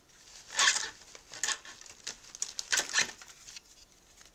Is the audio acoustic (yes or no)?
yes